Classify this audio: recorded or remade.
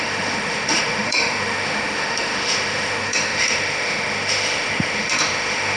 remade